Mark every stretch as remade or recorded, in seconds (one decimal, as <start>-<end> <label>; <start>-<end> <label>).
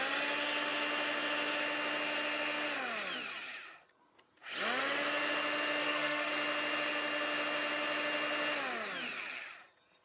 0.0-5.8 recorded; 5.8-6.3 remade; 6.3-10.0 recorded